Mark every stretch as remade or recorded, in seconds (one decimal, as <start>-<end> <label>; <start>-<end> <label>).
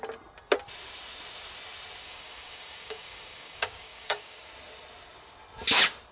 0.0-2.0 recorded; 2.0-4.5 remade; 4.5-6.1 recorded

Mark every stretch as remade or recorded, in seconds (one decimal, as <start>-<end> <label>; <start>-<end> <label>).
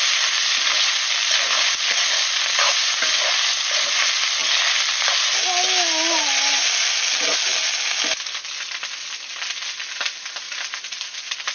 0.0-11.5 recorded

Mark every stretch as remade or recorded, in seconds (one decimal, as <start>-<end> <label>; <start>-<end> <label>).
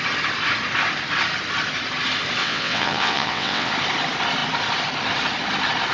0.0-2.4 recorded; 2.4-3.7 remade; 3.7-5.9 recorded